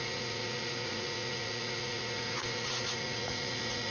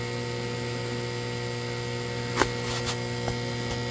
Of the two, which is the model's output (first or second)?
first